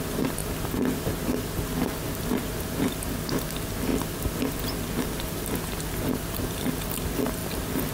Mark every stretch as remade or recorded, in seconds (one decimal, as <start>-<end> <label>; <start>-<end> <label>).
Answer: 0.0-7.9 recorded